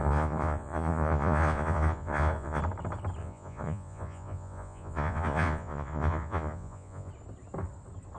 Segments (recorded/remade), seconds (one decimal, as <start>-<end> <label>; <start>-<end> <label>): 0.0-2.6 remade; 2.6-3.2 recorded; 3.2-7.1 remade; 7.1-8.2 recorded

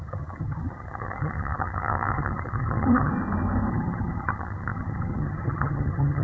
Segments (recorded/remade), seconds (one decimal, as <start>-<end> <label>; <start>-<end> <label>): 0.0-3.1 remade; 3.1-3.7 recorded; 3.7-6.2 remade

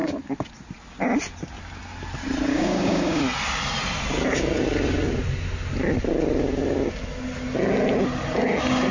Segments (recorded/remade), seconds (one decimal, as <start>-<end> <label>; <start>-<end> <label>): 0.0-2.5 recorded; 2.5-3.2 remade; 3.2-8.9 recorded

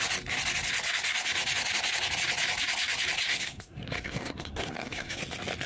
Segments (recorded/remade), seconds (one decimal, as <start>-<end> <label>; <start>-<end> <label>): 0.0-3.3 recorded; 3.3-5.2 remade; 5.2-5.7 recorded

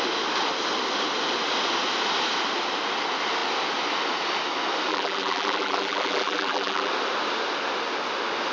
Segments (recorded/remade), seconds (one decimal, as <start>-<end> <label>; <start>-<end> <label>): 0.0-4.9 recorded; 4.9-6.9 remade; 6.9-8.5 recorded

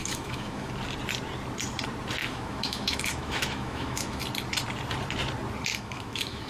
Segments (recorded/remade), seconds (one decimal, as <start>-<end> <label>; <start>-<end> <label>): 0.0-0.7 remade; 0.7-2.2 recorded; 2.2-4.2 remade; 4.2-5.7 recorded; 5.7-6.5 remade

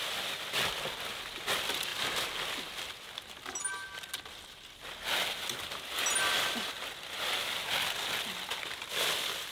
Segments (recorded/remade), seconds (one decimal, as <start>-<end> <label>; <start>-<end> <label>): 0.0-9.5 recorded

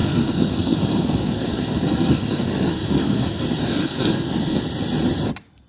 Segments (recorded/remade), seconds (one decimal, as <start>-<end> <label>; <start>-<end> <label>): 0.0-3.4 remade; 3.4-3.8 recorded; 3.8-4.6 remade; 4.6-5.7 recorded